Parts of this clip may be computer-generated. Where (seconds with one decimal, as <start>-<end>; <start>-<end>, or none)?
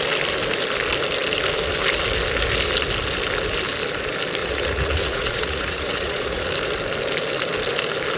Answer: 4.4-6.5